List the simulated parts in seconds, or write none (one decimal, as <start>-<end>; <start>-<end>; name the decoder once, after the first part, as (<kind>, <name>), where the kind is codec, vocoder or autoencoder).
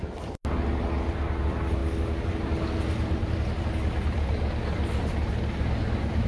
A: none